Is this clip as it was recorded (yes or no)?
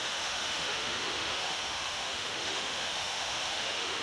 no